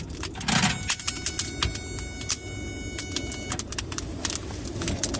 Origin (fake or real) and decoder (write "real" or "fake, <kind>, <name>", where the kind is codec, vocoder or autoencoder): real